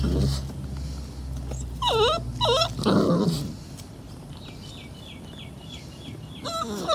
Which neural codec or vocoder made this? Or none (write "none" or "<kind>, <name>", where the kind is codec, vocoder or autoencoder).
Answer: none